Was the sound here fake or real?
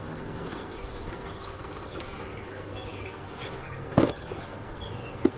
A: fake